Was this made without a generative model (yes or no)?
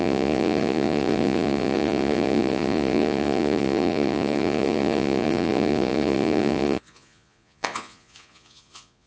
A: no